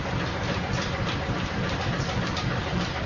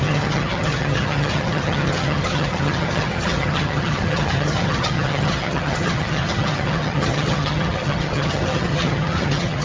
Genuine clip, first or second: first